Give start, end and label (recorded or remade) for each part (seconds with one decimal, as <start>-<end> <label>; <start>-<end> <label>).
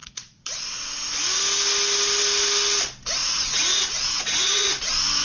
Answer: 0.0-0.6 remade; 0.6-3.2 recorded; 3.2-4.7 remade; 4.7-5.2 recorded